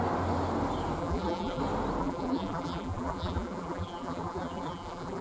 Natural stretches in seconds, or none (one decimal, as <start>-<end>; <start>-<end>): 0.0-1.0; 1.6-2.0